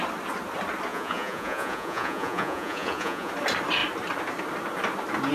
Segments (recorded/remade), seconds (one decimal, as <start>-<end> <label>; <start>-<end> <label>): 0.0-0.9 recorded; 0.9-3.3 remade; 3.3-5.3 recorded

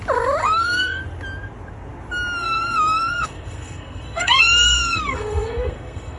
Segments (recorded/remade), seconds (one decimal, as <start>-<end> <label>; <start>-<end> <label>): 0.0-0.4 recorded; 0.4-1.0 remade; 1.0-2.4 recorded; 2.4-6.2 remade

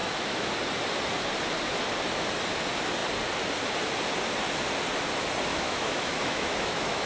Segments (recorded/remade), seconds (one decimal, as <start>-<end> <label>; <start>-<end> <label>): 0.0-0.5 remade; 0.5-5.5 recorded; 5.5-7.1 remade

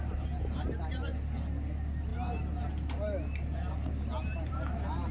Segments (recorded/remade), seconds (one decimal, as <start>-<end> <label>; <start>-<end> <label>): 0.0-5.1 recorded

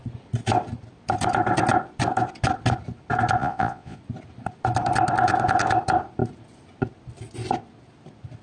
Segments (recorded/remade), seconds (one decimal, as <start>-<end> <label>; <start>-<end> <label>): 0.0-3.4 recorded; 3.4-4.0 remade; 4.0-8.4 recorded